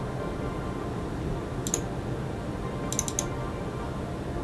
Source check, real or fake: real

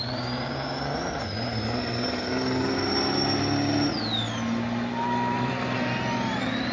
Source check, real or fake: real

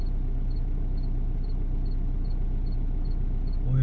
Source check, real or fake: real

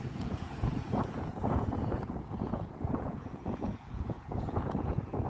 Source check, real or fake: fake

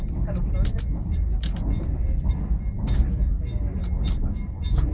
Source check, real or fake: real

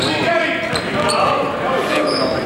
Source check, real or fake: real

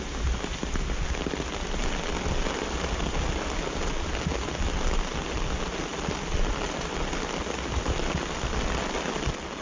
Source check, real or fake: real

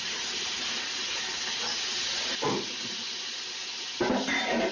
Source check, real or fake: real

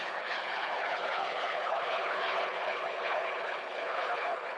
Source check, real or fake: fake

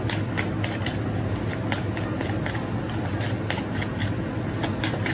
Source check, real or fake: real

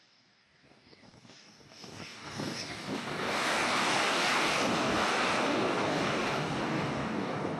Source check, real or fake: fake